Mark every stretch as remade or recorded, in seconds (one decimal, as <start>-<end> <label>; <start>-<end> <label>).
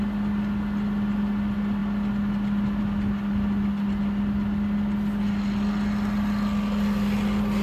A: 0.0-7.6 recorded